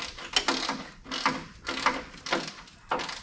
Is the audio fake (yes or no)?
no